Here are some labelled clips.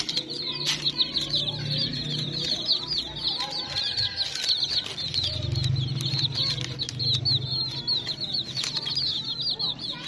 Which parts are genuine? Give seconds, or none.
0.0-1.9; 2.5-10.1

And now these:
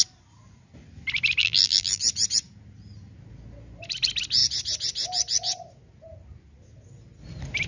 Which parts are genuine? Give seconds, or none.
0.0-1.4; 2.0-7.7

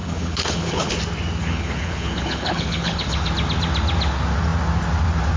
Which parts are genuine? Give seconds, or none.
0.9-1.4; 3.3-5.4

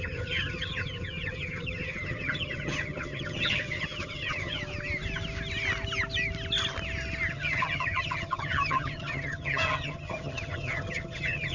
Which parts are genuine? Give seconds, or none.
4.6-7.3